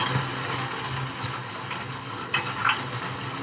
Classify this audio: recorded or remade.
recorded